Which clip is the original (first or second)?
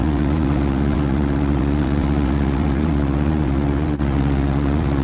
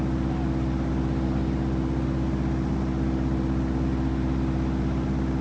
second